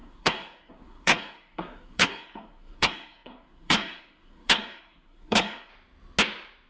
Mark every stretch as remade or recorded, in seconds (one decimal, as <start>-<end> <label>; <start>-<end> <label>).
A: 0.0-5.7 remade; 5.7-6.7 recorded